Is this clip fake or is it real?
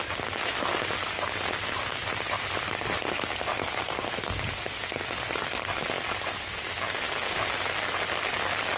real